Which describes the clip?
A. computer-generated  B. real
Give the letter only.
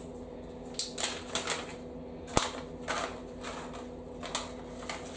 B